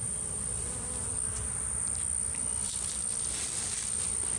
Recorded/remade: recorded